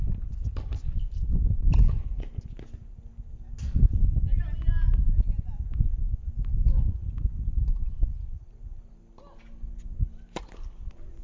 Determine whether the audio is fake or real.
real